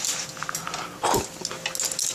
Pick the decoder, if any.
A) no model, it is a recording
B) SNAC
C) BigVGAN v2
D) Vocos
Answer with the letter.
A